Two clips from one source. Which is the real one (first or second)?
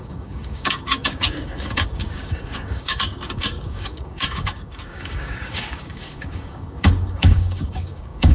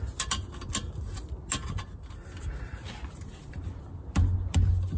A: second